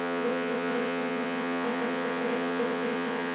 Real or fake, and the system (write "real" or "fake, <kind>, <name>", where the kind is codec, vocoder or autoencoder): fake, vocoder, WaveNeXt